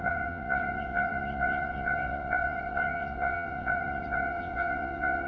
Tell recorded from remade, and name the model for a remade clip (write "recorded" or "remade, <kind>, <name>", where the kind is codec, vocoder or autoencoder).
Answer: remade, vocoder, WaveNeXt